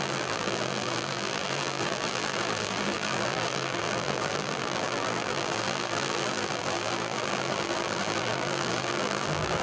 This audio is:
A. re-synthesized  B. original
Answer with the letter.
A